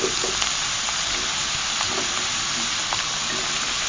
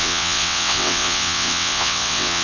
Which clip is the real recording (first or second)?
first